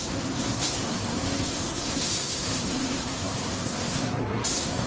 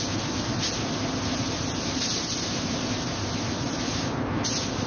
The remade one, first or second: first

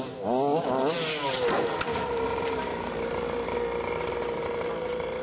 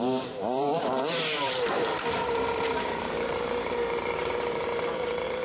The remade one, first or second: second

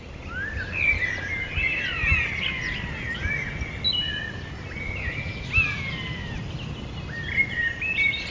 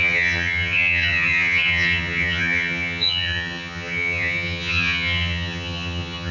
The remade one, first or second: second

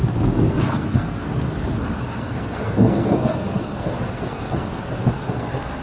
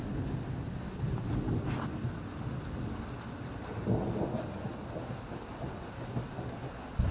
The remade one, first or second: first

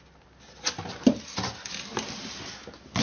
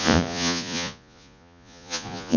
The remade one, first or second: second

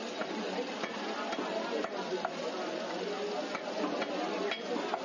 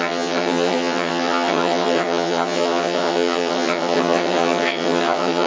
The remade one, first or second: second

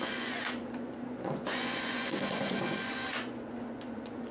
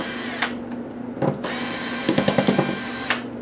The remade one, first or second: first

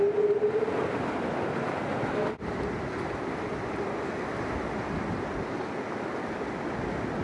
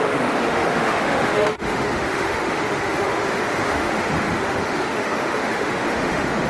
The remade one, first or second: second